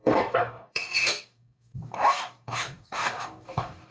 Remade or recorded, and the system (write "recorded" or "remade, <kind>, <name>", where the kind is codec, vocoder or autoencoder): remade, codec, DAC